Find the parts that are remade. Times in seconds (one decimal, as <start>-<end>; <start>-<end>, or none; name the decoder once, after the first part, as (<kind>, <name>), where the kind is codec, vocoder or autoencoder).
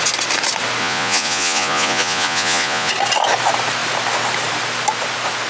0.8-2.9 (vocoder, Vocos)